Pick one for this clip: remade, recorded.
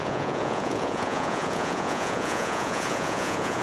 remade